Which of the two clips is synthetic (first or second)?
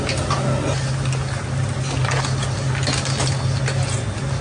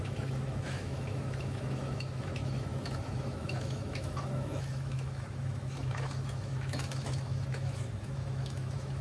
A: second